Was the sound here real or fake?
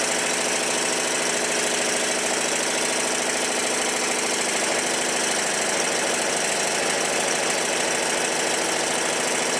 real